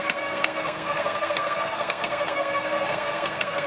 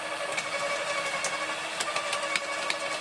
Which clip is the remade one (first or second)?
first